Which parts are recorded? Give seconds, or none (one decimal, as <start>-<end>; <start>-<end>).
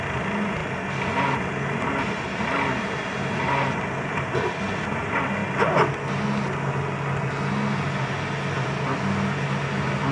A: 0.0-10.1